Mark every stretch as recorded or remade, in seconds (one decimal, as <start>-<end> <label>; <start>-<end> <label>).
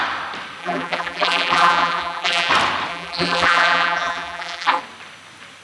0.0-0.6 recorded; 0.6-2.5 remade; 2.5-2.9 recorded; 2.9-4.8 remade; 4.8-5.6 recorded